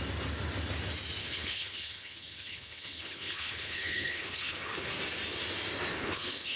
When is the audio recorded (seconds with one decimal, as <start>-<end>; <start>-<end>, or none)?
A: 0.0-1.2; 4.9-5.9